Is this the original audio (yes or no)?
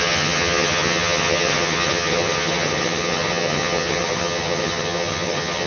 no